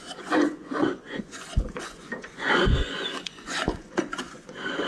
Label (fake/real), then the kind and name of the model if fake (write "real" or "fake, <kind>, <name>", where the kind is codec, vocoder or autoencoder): fake, vocoder, Vocos